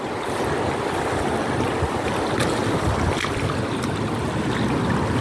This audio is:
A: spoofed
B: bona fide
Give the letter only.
B